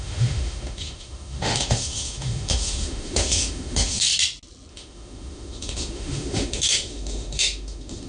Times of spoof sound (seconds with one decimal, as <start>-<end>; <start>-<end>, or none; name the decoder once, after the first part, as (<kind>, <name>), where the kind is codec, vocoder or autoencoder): 0.0-4.1 (autoencoder, DAC-VAE); 4.7-8.1